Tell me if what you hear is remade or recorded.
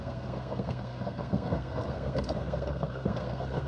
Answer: remade